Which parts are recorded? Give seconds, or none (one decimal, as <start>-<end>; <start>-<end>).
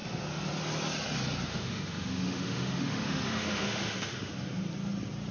0.0-1.5; 4.3-5.3